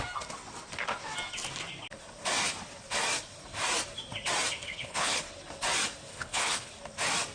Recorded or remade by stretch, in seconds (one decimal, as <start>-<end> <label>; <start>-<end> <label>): 0.0-4.6 recorded; 4.6-5.2 remade; 5.2-6.1 recorded; 6.1-6.7 remade; 6.7-7.3 recorded